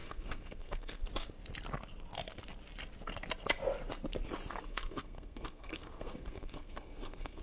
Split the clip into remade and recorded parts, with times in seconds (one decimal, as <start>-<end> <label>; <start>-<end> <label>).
0.0-1.0 remade; 1.0-4.7 recorded; 4.7-7.4 remade